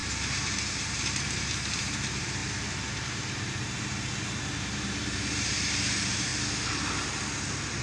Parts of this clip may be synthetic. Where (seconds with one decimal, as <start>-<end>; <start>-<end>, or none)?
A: 0.0-6.3